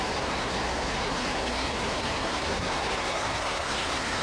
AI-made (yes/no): yes